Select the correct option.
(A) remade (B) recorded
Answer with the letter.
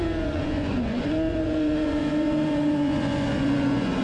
A